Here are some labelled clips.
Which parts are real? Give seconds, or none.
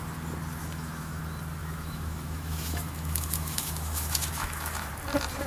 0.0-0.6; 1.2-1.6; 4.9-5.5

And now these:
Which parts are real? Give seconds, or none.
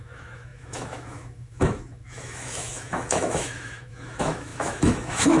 none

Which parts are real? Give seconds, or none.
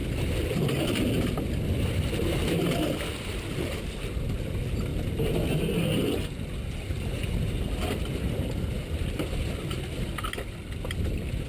0.0-11.5